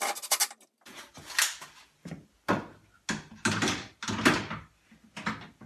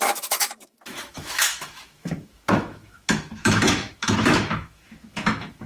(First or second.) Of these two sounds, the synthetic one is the second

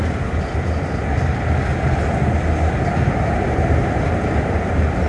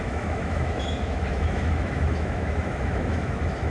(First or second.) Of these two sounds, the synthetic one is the second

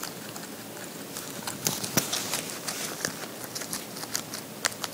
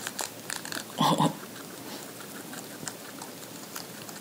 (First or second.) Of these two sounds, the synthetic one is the second